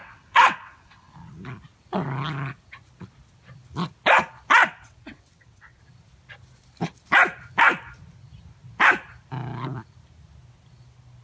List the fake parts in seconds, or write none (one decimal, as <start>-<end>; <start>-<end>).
0.0-1.1; 4.6-5.8

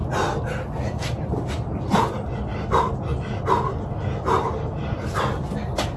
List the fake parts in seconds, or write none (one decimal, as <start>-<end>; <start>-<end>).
none

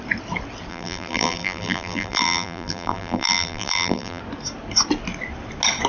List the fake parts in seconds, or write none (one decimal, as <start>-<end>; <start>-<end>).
0.7-4.2

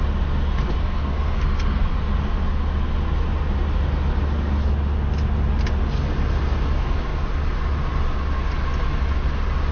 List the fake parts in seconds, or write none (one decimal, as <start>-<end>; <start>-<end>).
0.8-1.9

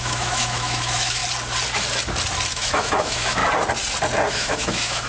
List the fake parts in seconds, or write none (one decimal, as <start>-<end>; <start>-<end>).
0.0-1.2; 2.5-3.4; 4.3-5.1

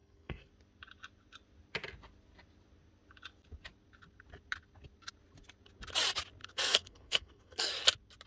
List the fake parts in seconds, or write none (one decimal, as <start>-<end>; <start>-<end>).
0.0-0.5; 6.4-7.7

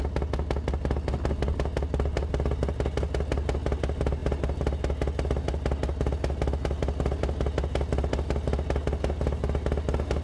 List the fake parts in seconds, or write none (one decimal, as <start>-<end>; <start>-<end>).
none

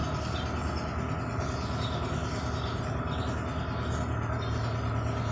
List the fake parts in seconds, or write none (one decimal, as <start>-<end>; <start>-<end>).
none